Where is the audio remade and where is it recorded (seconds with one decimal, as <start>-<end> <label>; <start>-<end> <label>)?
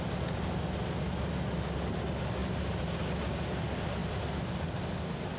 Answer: 0.0-5.4 recorded